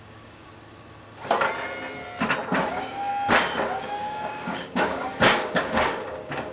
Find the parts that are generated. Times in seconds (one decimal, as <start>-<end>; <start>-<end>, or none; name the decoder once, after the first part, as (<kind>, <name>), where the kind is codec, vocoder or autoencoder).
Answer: 0.0-0.5 (codec, DAC); 2.7-3.1; 3.7-6.5